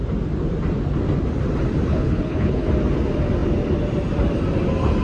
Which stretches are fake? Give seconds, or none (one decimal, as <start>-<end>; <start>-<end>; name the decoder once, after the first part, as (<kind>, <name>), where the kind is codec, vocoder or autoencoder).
1.9-2.7 (codec, HILCodec)